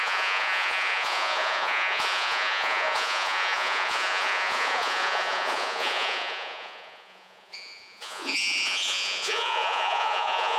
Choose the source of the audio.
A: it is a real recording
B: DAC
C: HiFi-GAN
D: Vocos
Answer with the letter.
D